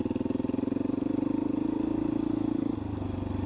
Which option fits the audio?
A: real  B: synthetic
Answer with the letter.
A